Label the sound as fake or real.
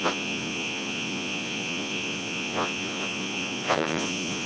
fake